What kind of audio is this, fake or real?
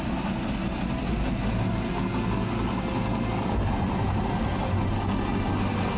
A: real